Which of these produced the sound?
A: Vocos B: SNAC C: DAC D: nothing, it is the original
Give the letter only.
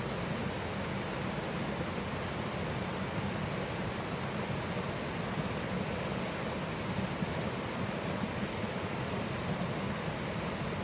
D